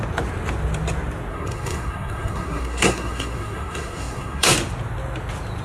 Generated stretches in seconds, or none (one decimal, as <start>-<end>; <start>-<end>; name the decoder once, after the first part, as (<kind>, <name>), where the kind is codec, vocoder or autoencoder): 1.3-4.5 (codec, SNAC)